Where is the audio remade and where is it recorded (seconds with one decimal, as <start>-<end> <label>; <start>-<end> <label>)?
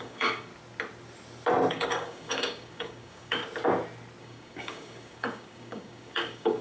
0.0-0.5 remade; 0.5-1.7 recorded; 1.7-3.4 remade; 3.4-4.2 recorded; 4.2-6.6 remade